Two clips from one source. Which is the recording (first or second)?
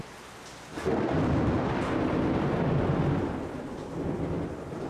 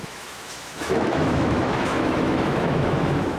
first